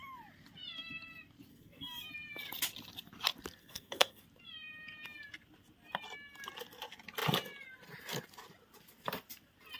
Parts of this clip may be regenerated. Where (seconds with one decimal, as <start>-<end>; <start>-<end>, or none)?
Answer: 1.5-2.1; 3.6-4.2

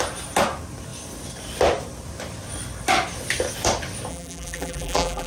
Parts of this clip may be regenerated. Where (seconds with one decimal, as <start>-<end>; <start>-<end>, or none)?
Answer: 4.1-5.3

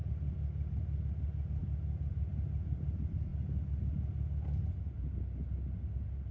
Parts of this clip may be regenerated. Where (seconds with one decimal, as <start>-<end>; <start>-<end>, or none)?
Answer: none

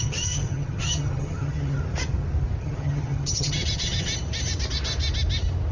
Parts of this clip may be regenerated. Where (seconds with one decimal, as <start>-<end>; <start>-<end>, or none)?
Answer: 0.0-1.8; 2.6-4.1

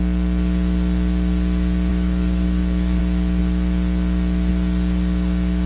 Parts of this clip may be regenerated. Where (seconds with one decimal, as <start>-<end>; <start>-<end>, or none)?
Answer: 1.9-3.0

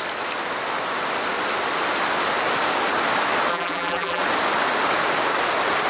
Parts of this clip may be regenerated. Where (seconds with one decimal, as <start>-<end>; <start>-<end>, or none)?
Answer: 3.5-4.2